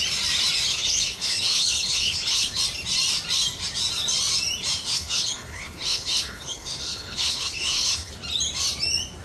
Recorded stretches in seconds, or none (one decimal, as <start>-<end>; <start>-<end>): 0.0-0.7; 2.6-4.8; 8.1-9.2